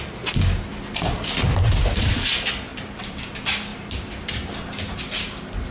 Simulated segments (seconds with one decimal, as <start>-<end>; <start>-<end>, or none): 0.7-2.3; 2.7-3.3; 3.7-4.3